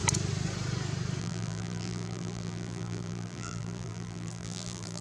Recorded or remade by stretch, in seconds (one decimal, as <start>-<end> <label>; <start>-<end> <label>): 0.0-1.2 recorded; 1.2-5.0 remade